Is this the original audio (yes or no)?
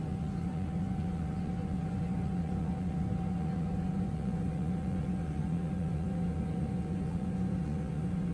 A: no